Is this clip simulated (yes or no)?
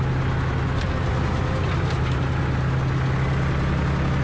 no